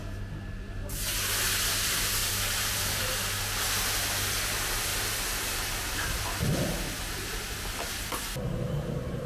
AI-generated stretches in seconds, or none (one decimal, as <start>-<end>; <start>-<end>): 2.2-3.0